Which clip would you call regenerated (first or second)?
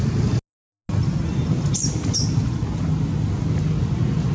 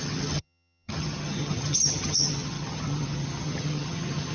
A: second